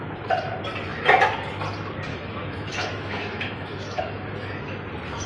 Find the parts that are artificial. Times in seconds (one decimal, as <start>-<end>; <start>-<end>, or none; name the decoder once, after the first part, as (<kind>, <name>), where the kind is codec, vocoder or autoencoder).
2.1-4.0 (autoencoder, DAC-VAE)